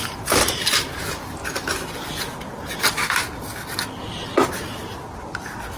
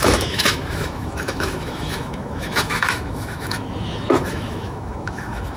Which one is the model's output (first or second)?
second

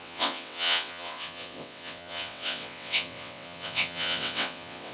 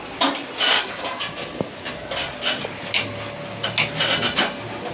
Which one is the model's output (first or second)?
first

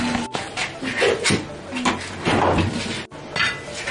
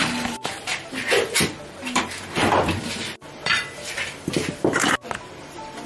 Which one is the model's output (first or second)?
second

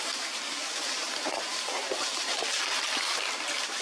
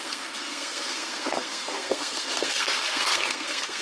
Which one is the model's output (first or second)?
second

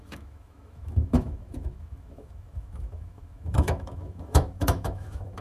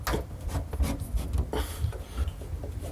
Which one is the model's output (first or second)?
first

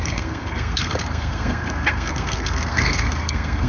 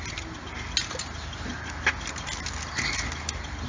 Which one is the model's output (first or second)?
first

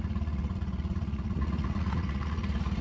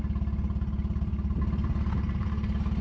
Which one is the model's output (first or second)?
first